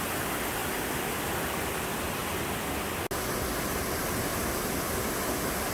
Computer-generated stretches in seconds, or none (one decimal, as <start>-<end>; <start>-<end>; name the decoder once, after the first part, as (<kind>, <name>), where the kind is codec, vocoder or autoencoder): none